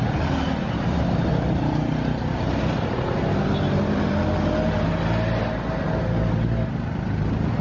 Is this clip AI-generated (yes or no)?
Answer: no